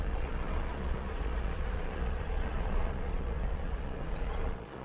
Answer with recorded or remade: remade